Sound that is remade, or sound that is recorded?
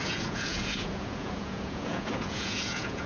remade